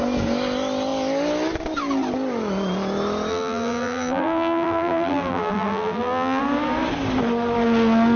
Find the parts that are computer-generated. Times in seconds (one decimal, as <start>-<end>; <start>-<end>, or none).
3.3-6.4